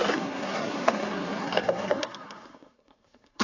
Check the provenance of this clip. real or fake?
fake